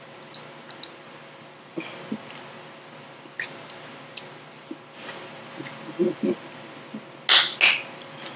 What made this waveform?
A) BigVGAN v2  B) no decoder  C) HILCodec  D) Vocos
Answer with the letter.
B